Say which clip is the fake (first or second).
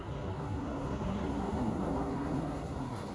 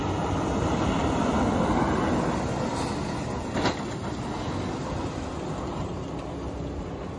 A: first